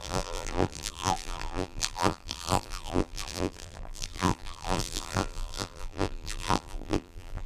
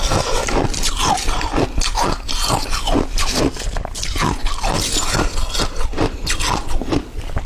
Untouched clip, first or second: second